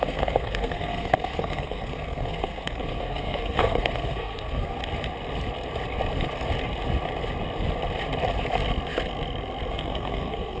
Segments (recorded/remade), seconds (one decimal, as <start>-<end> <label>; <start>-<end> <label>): 0.0-4.8 remade; 4.8-9.7 recorded; 9.7-10.6 remade